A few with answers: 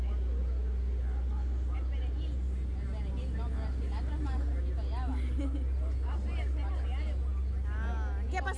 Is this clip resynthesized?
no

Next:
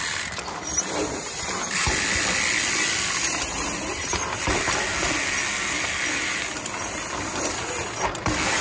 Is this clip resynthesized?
no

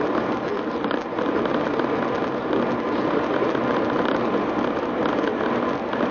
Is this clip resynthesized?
no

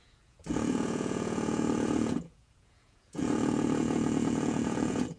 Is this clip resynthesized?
yes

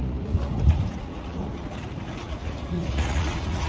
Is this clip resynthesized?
yes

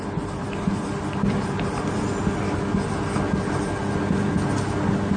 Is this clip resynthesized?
no